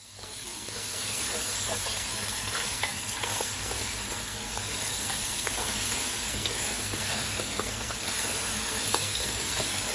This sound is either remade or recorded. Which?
remade